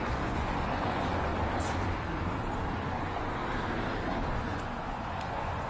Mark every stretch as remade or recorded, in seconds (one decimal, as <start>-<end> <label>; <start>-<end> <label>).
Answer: 0.0-1.3 remade; 1.3-2.9 recorded; 2.9-3.4 remade; 3.4-4.3 recorded; 4.3-5.7 remade